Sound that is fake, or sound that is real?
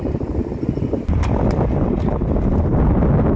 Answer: real